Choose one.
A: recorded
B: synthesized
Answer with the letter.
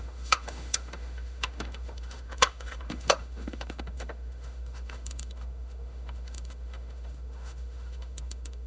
B